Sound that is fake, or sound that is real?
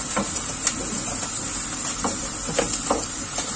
real